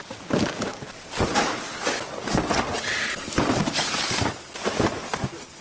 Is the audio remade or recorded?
recorded